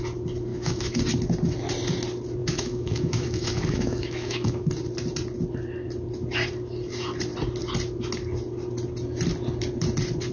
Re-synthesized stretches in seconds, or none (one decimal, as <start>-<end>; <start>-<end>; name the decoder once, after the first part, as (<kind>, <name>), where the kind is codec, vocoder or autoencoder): 0.5-1.0 (autoencoder, DAC-VAE); 2.4-4.7